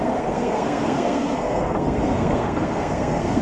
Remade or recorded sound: remade